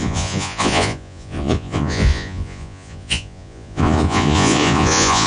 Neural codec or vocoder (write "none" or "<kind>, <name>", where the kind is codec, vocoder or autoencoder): vocoder, Vocos